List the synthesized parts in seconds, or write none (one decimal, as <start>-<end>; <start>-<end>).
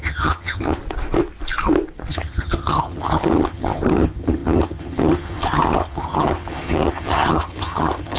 0.0-0.8; 2.1-8.2